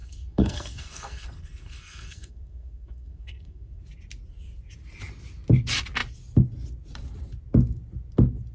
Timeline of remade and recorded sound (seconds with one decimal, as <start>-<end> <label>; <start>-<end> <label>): 0.0-3.8 remade; 3.8-8.5 recorded